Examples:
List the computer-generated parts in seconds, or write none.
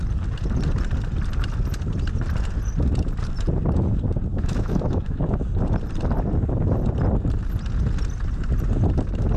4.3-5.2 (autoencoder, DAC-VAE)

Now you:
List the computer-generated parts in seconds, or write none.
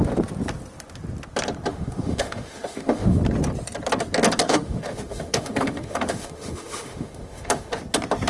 1.7-3.2 (autoencoder, DAC-VAE); 4.5-7.8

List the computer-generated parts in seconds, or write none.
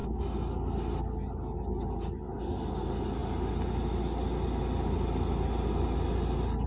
none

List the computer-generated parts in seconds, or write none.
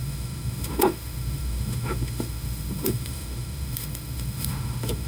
0.0-5.1 (autoencoder, DAC-VAE)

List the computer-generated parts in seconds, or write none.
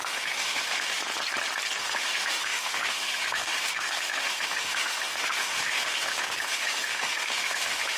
0.0-1.1 (autoencoder, DAC-VAE); 1.8-8.0